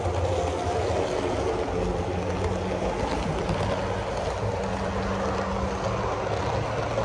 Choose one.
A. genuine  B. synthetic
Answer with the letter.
A